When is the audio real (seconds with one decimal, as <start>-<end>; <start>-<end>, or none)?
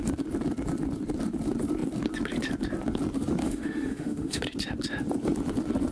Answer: 0.0-3.4; 4.4-5.9